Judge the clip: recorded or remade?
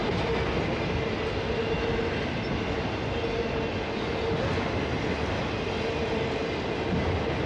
recorded